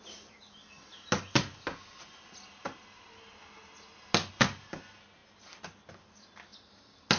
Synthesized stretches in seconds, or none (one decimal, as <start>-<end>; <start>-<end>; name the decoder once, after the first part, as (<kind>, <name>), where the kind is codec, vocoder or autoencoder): none